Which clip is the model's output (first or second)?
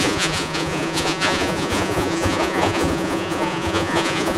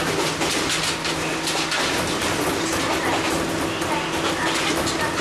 first